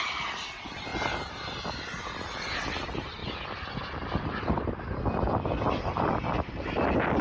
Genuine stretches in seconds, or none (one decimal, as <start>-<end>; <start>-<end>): 0.0-7.2